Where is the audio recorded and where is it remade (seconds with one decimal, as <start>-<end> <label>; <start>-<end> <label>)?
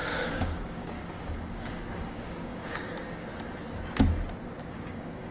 0.0-3.3 remade; 3.3-4.6 recorded; 4.6-5.3 remade